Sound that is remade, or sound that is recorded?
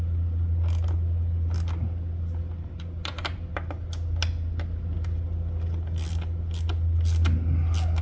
recorded